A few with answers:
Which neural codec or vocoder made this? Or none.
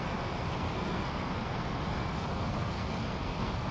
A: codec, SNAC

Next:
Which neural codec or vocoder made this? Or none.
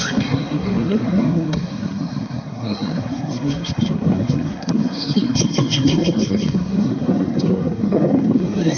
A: codec, SNAC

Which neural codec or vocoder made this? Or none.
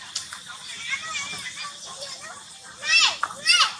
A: none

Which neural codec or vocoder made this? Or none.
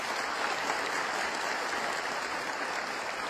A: none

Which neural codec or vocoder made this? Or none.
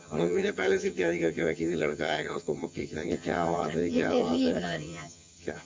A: vocoder, HiFi-GAN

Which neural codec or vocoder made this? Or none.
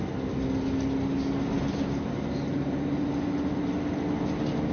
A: none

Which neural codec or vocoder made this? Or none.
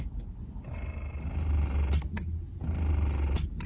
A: none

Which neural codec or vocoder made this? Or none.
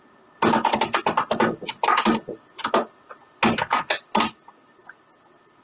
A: none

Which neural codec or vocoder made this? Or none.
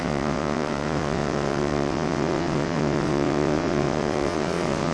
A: vocoder, WaveNeXt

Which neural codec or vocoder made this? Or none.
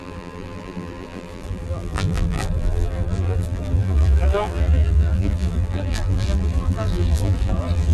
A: vocoder, BigVGAN v2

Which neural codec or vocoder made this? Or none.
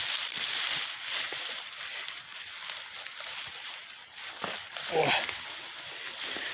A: none